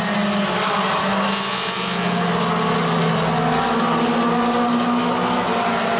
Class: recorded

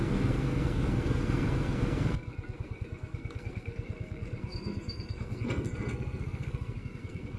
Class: remade